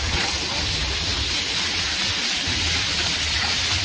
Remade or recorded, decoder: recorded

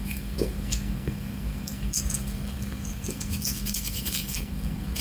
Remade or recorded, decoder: remade, codec, SNAC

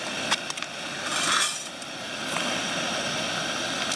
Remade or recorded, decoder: recorded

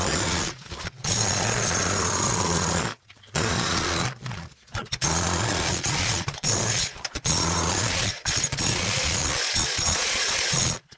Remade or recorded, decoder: remade, vocoder, Vocos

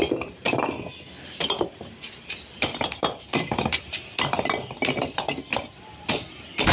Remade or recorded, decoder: recorded